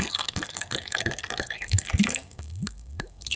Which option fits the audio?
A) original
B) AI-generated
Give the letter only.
B